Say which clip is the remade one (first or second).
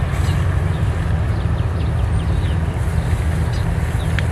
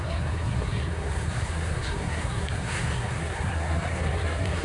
second